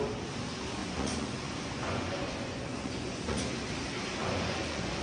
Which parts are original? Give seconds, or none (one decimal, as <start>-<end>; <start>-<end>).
0.0-0.8; 3.4-4.2